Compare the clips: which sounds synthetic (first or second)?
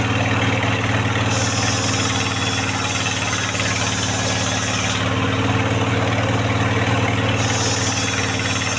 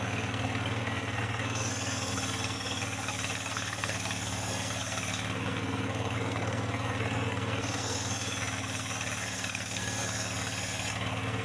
second